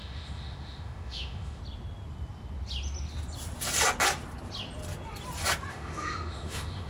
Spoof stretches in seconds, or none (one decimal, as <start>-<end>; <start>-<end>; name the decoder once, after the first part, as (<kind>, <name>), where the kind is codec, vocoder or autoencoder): 0.0-1.6 (autoencoder, DAC-VAE); 5.7-6.9